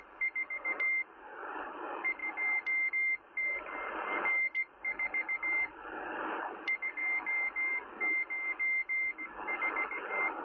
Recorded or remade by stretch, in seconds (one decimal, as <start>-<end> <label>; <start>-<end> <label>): 0.0-2.2 remade; 2.2-2.9 recorded; 2.9-7.7 remade; 7.7-9.6 recorded; 9.6-10.4 remade